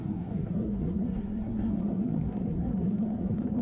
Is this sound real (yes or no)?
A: no